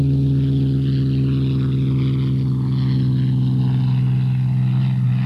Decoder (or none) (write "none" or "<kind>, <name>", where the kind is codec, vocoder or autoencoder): none